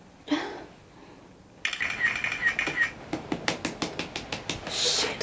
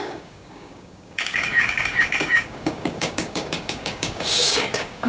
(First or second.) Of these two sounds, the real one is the first